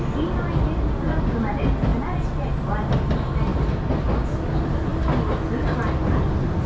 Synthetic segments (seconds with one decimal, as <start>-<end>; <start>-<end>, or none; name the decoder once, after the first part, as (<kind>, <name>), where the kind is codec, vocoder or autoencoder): none